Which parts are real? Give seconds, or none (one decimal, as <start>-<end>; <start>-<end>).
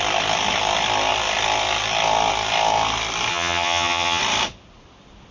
0.0-3.3; 4.2-5.3